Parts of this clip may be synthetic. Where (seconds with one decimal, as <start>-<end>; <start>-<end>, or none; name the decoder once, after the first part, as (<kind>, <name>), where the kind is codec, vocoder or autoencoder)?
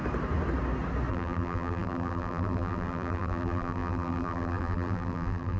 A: 1.1-5.6 (vocoder, BigVGAN v2)